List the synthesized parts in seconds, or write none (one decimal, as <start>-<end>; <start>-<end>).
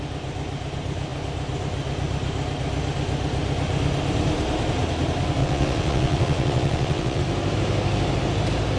5.4-7.2